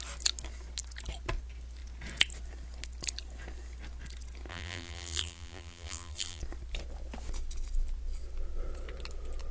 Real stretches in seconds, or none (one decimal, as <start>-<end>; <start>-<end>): 0.0-4.5; 6.4-9.5